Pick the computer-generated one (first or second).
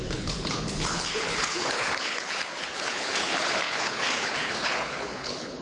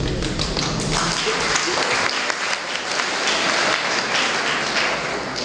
first